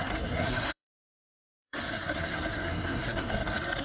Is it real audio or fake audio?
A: fake